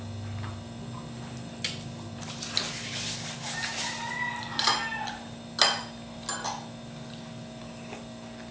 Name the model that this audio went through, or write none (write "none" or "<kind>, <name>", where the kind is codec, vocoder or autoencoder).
none